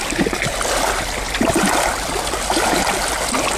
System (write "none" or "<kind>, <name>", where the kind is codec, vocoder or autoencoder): none